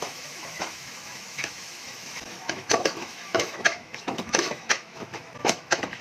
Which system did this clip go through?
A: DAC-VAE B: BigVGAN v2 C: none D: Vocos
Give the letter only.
A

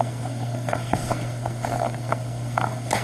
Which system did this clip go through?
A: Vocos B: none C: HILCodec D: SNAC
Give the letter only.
D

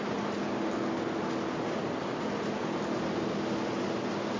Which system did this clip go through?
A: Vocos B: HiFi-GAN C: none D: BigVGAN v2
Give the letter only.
C